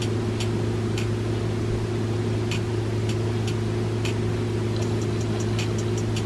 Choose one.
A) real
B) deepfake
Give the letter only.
A